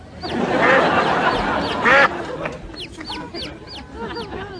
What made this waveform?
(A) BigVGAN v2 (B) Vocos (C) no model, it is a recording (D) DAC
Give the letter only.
C